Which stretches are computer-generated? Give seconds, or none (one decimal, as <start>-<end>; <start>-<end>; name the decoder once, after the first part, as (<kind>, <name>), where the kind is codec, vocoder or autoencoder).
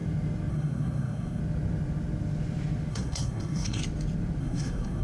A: 0.5-1.4 (codec, SNAC); 2.9-3.8; 4.4-5.0